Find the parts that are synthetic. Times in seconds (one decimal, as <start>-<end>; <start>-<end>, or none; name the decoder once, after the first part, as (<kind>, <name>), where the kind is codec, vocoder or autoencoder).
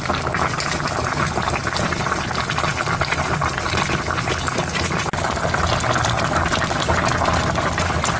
none